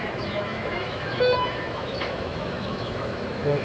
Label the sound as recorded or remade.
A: remade